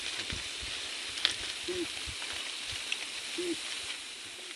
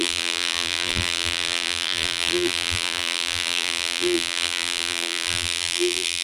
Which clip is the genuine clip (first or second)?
first